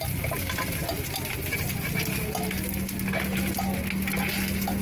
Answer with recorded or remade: recorded